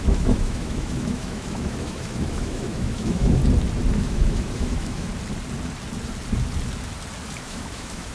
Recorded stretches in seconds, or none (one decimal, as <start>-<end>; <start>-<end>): 3.4-4.0; 5.1-7.4